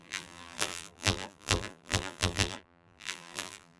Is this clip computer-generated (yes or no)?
yes